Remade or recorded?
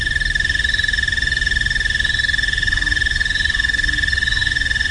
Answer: recorded